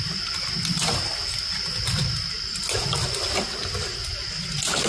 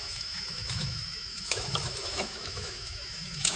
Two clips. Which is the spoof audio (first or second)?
second